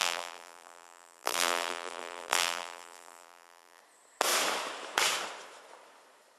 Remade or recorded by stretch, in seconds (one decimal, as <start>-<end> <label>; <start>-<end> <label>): 0.0-3.8 remade; 3.8-6.4 recorded